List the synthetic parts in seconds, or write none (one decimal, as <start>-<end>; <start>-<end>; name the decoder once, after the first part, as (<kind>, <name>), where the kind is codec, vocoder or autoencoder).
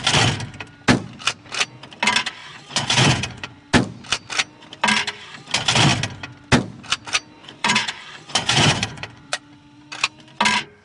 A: 2.4-3.6 (vocoder, Vocos); 7.4-9.4